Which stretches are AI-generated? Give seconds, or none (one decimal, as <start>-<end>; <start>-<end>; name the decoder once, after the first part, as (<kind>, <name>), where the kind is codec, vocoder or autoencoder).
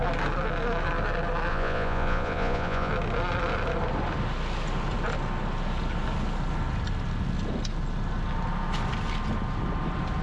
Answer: 1.5-2.9 (vocoder, Vocos)